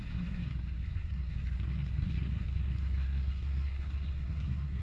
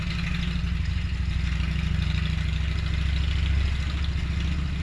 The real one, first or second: second